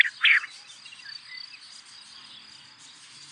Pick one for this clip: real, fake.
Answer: real